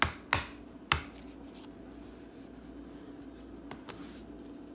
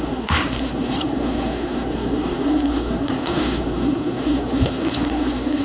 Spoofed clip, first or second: second